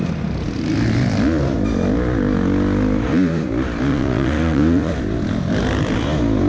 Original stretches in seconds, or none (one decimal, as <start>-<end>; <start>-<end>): 0.0-3.9; 4.9-6.5